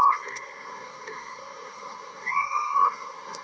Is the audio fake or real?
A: fake